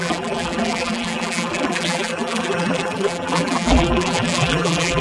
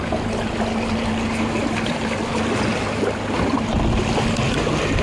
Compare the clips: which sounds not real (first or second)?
first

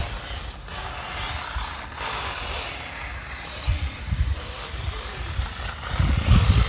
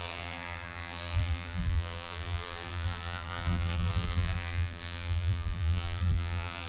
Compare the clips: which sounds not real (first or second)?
second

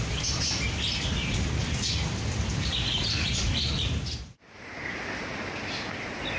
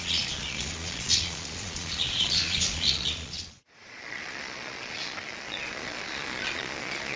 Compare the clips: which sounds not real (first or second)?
second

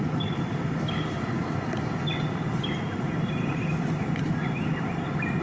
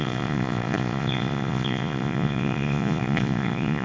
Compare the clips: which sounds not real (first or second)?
second